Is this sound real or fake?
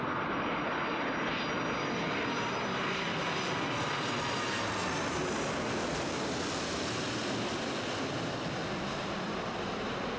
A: real